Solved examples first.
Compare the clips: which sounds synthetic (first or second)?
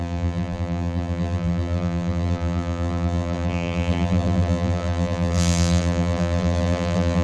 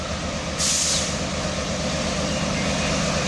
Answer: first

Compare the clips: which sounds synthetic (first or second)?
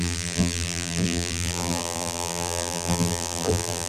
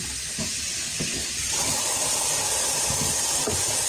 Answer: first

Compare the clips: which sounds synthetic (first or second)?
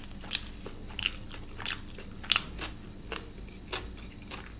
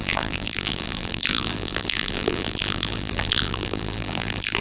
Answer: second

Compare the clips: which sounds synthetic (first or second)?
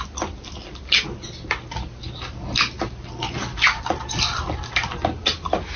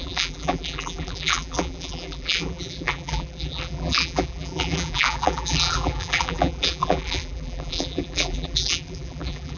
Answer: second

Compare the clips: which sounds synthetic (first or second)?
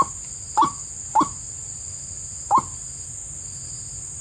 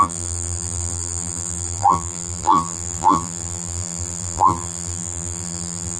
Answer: second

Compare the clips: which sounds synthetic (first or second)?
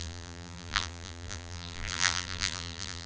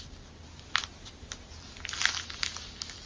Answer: first